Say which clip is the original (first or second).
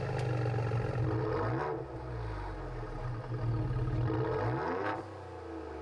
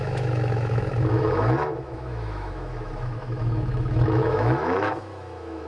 first